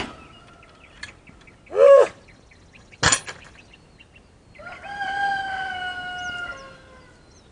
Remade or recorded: recorded